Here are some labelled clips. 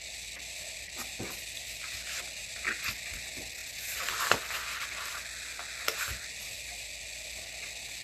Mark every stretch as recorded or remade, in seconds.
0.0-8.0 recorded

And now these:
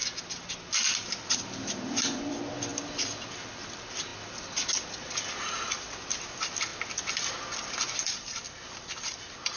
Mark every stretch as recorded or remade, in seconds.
0.0-1.4 recorded; 1.4-2.7 remade; 2.7-3.3 recorded; 3.3-4.1 remade; 4.1-6.0 recorded; 6.0-6.7 remade; 6.7-7.6 recorded; 7.6-9.6 remade